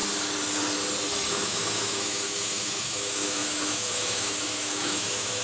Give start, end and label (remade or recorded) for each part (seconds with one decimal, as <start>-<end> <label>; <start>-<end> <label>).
0.0-1.3 recorded; 1.3-5.4 remade